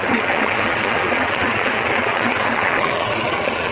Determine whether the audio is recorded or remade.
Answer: remade